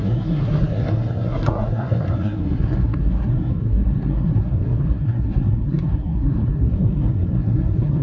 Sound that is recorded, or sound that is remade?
remade